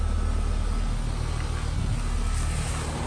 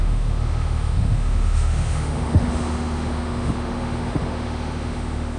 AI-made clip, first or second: second